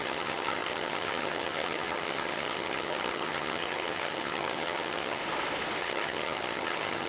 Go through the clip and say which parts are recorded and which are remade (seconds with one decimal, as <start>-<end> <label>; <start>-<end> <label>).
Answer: 0.0-5.2 remade; 5.2-5.8 recorded; 5.8-7.1 remade